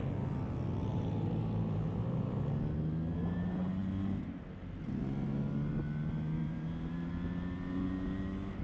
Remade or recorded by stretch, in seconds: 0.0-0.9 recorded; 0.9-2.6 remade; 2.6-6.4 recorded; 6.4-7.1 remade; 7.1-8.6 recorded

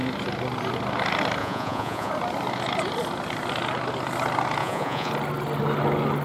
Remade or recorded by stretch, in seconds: 0.0-1.4 recorded; 1.4-2.1 remade; 2.1-4.6 recorded; 4.6-5.1 remade; 5.1-6.2 recorded